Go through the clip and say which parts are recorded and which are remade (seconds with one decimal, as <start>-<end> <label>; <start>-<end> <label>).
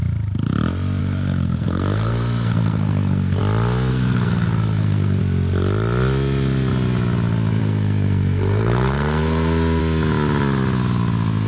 0.0-1.0 recorded; 1.0-3.4 remade; 3.4-3.9 recorded; 3.9-5.2 remade; 5.2-7.6 recorded; 7.6-9.8 remade; 9.8-11.5 recorded